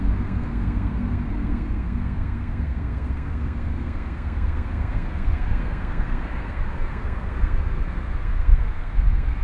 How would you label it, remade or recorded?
remade